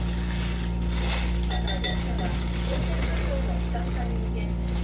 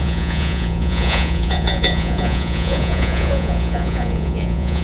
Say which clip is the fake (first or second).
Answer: second